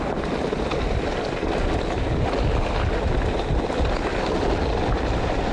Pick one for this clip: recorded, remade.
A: recorded